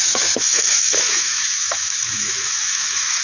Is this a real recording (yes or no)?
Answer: no